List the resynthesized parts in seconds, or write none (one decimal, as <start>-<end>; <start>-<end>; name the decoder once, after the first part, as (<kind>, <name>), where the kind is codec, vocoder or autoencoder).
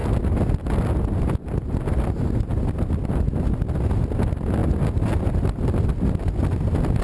none